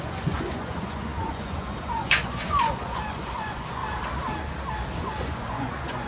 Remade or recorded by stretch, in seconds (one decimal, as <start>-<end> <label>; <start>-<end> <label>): 0.0-3.8 remade; 3.8-5.0 recorded; 5.0-6.1 remade